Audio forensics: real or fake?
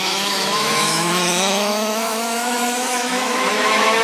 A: fake